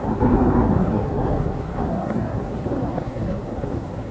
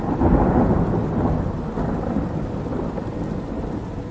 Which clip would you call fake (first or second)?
first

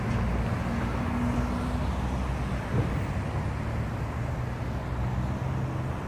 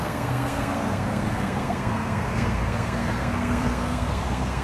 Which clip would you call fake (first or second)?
second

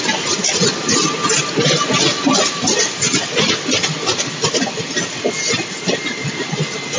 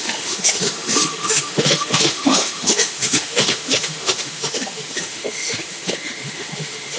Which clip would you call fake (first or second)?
second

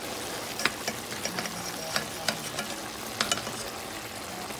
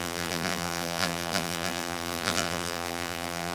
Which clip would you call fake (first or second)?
second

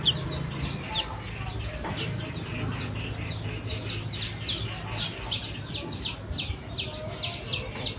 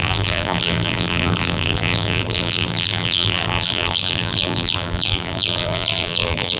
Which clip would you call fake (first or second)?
second